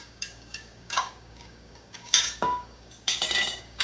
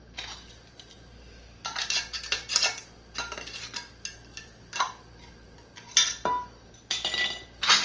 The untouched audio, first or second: second